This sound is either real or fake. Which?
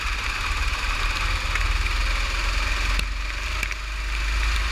real